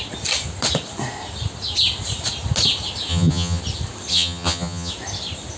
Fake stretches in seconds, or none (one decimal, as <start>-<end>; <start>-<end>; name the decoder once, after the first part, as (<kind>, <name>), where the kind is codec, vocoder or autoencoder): 3.1-3.6 (vocoder, HiFi-GAN); 4.1-4.9